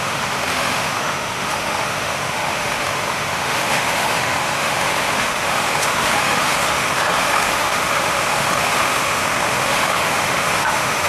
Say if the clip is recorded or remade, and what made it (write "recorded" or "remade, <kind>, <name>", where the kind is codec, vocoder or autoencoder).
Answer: remade, autoencoder, DAC-VAE